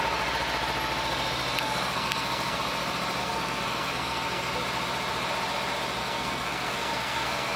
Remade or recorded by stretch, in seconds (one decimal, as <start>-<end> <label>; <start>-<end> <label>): 0.0-1.6 recorded; 1.6-2.6 remade; 2.6-3.2 recorded; 3.2-4.5 remade; 4.5-6.0 recorded; 6.0-7.6 remade